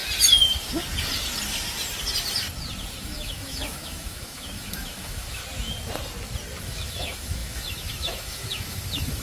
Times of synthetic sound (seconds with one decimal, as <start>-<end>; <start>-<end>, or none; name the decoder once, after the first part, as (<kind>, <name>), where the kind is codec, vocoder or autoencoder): 3.0-5.4 (autoencoder, DAC-VAE); 6.6-9.2